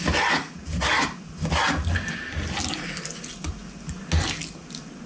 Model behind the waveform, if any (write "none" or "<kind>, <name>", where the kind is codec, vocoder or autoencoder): none